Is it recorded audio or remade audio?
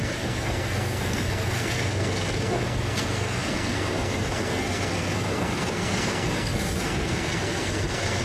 remade